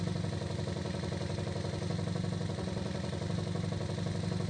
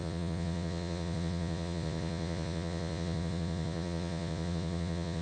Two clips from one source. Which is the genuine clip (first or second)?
first